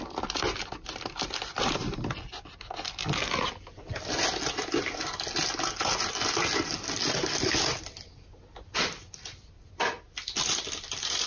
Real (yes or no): yes